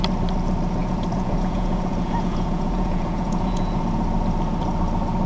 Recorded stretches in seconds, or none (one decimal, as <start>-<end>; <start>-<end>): 0.0-0.8; 3.8-5.3